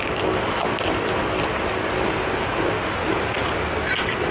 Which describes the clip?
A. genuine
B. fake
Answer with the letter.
A